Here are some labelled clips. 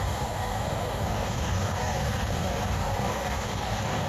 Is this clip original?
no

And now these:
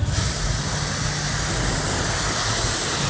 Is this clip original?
yes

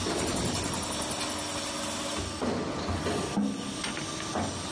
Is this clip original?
yes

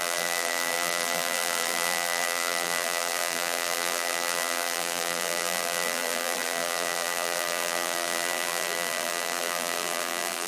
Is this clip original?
no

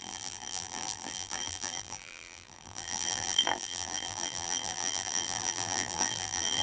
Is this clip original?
no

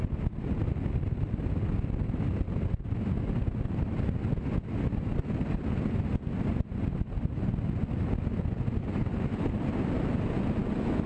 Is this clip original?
yes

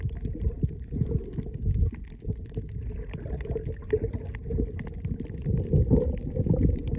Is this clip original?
yes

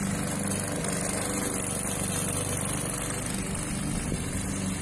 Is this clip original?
yes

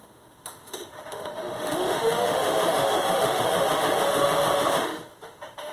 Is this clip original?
no